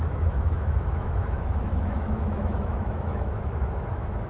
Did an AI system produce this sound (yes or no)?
yes